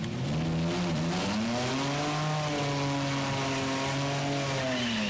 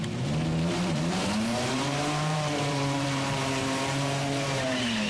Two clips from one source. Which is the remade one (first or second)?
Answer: second